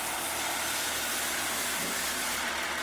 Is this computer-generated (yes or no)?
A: no